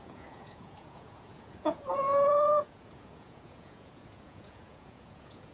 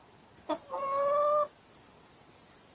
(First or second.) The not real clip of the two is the first